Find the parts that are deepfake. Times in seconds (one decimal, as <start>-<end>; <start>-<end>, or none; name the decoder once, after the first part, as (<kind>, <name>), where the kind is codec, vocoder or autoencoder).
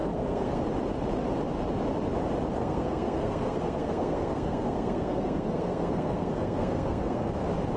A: 0.0-0.6 (codec, SNAC); 2.6-7.3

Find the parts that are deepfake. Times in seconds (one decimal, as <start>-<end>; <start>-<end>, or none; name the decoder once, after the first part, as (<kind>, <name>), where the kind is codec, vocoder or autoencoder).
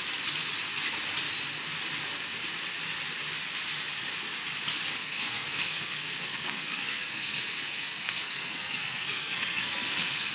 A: 5.0-10.3 (codec, SNAC)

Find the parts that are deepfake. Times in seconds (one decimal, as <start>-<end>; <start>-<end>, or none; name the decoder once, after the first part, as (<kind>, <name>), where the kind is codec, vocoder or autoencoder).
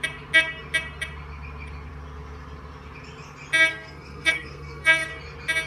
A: 3.7-5.1 (codec, SNAC)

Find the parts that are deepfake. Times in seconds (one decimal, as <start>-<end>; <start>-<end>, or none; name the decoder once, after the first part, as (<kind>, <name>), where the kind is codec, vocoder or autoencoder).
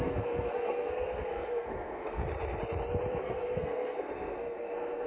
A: 0.0-2.2 (codec, SNAC); 3.1-5.1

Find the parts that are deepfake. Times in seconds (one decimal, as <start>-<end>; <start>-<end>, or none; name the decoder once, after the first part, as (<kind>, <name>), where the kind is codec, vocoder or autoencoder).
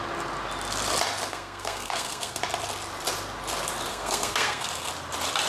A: 1.3-2.4 (codec, SNAC); 3.9-4.9